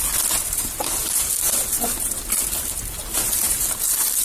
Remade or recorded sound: recorded